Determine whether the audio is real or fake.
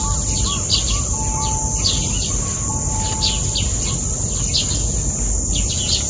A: real